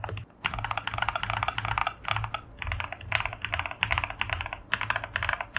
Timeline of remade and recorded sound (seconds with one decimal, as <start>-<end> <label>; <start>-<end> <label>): 0.0-5.6 recorded